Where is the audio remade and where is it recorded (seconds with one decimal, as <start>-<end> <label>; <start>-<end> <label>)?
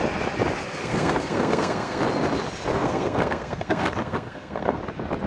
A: 0.0-0.8 recorded; 0.8-2.0 remade; 2.0-2.7 recorded; 2.7-4.8 remade; 4.8-5.3 recorded